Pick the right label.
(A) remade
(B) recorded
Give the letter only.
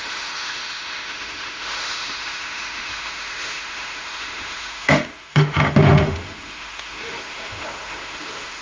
A